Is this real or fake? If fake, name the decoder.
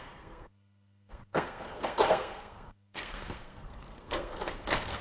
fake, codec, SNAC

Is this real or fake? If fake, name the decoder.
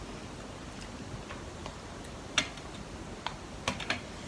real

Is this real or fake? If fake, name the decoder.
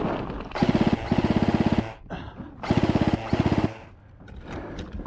real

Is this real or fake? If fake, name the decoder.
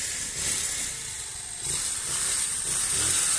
real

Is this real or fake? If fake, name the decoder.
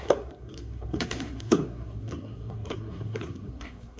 fake, codec, SNAC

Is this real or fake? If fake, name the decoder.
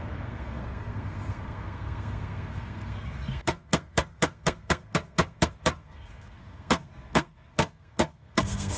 fake, codec, SNAC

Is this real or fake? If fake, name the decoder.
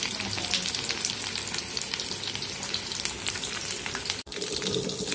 real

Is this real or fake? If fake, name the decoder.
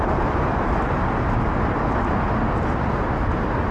real